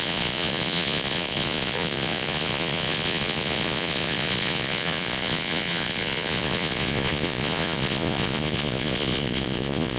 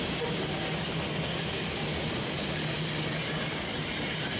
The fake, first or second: first